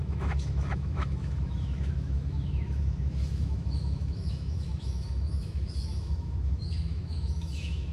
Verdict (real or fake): fake